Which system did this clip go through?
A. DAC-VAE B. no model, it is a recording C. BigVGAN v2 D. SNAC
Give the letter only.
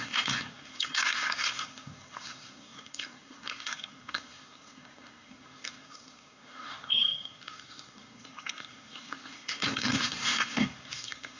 D